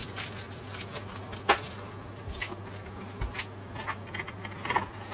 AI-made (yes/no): no